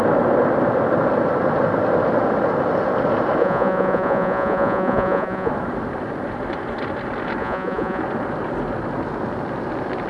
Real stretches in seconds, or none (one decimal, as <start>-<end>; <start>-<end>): 0.0-3.4; 5.5-7.4; 8.0-10.1